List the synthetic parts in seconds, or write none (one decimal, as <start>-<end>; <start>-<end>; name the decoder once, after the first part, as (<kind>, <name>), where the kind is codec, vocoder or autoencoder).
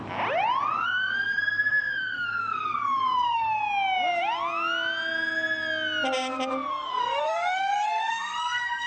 0.8-3.6 (codec, SNAC); 6.7-8.9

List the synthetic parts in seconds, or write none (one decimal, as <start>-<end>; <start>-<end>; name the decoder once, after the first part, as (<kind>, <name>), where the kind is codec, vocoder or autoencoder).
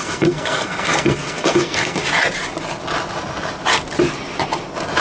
0.0-2.0 (codec, SNAC)